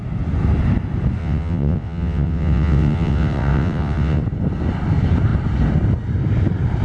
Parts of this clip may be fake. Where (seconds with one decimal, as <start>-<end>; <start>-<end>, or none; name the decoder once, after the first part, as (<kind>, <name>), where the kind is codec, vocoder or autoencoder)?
1.2-4.2 (vocoder, WaveNeXt)